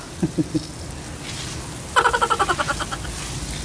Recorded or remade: recorded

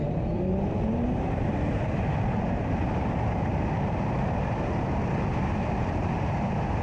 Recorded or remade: remade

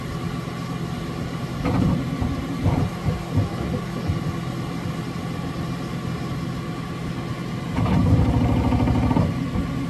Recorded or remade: recorded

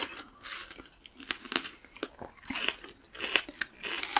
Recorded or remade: recorded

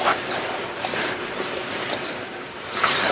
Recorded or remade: remade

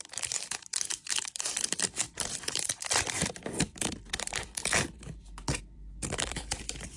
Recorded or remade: remade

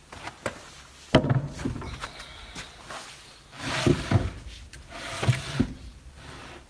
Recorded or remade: recorded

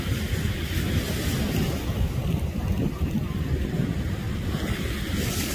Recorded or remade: recorded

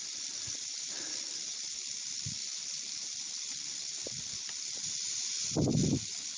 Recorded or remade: recorded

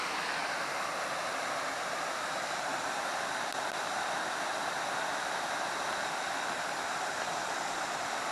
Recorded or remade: remade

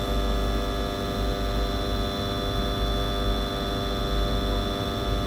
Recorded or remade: recorded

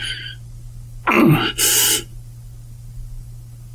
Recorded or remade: recorded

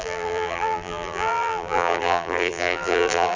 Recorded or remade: remade